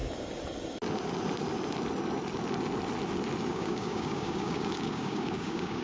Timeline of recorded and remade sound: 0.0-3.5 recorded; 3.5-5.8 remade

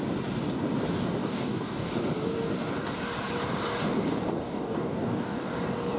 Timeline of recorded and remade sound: 0.0-1.2 recorded; 1.2-1.9 remade; 1.9-4.4 recorded; 4.4-5.5 remade; 5.5-6.0 recorded